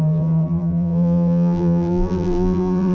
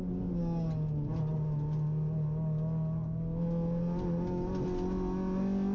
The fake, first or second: first